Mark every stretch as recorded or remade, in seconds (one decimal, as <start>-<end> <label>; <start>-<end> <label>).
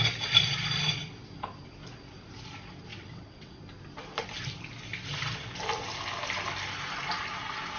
0.0-2.9 recorded; 2.9-3.6 remade; 3.6-7.8 recorded